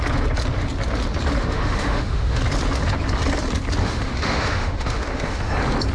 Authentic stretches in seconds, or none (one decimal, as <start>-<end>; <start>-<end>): 0.0-1.4; 2.4-3.8; 5.5-5.9